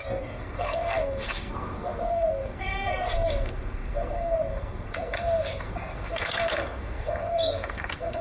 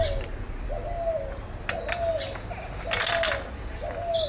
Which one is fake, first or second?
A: first